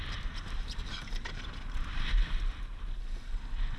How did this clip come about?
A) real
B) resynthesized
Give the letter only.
A